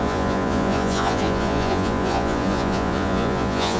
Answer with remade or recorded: remade